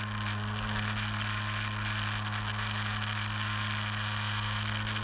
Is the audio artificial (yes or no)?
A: no